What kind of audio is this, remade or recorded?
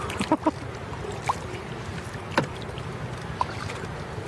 recorded